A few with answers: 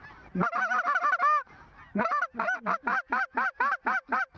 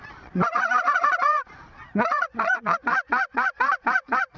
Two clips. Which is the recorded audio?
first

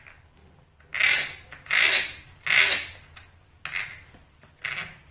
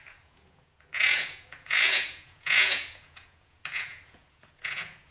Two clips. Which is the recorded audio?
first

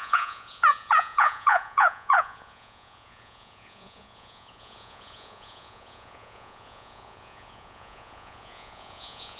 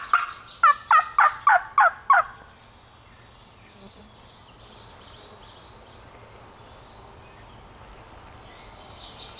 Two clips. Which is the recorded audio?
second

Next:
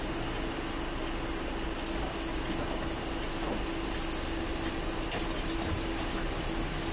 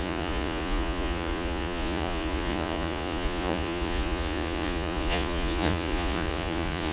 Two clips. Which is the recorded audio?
first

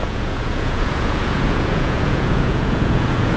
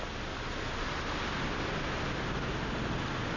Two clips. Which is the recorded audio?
second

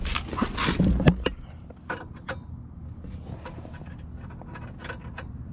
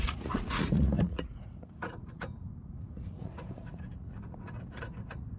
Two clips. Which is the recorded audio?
first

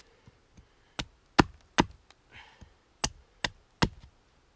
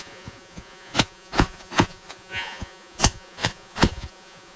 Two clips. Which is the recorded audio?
first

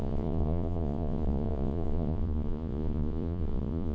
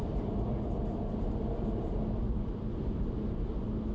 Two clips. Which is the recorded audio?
second